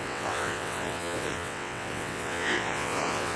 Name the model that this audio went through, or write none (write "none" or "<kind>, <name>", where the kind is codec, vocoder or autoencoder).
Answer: vocoder, WaveNeXt